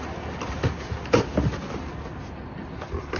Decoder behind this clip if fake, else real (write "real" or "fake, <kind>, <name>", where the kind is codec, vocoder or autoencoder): real